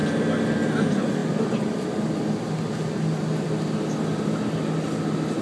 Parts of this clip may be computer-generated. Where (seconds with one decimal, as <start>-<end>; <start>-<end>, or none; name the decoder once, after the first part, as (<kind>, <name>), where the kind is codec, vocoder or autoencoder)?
none